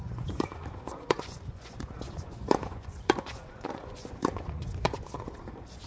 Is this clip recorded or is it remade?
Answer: remade